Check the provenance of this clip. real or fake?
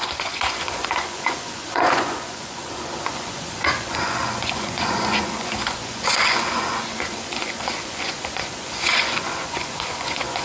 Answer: fake